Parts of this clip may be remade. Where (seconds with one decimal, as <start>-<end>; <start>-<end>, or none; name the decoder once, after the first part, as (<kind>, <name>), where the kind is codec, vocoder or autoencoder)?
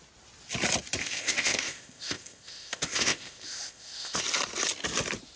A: 1.0-4.2 (codec, ZipCodec)